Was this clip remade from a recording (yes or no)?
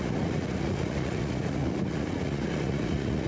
yes